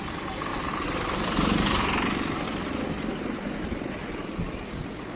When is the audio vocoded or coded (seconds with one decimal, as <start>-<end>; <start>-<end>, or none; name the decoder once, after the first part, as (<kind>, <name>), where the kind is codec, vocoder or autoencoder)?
0.5-1.8 (vocoder, BigVGAN v2); 4.0-4.7